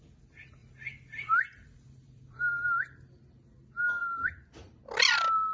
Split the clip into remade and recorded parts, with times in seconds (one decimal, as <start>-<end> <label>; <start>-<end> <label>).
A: 0.0-0.6 recorded; 0.6-2.5 remade; 2.5-4.0 recorded; 4.0-4.8 remade; 4.8-5.5 recorded